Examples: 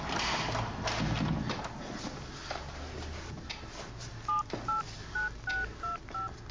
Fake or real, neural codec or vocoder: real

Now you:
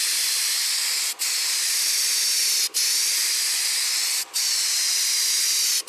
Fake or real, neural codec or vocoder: real